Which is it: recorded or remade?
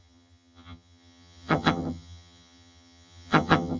remade